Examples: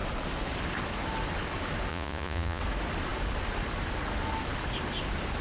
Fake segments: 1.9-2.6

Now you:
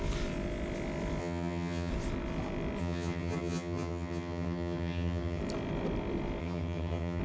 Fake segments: 1.2-1.9; 2.8-5.4; 6.4-7.2

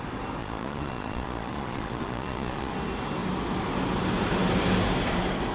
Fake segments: 0.4-2.7

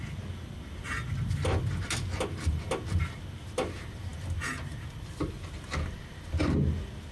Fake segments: none

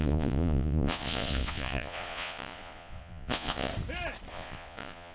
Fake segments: 0.0-3.7; 4.3-5.1